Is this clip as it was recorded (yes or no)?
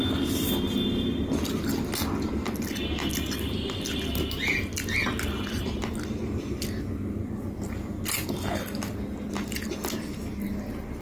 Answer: yes